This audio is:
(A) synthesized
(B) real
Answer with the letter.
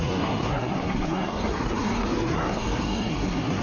A